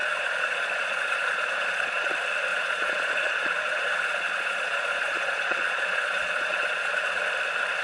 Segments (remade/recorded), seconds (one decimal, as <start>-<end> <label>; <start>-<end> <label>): 0.0-2.1 remade; 2.1-2.5 recorded; 2.5-7.2 remade; 7.2-7.8 recorded